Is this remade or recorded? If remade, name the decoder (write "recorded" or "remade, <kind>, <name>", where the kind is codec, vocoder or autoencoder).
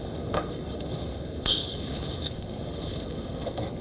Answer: remade, codec, SNAC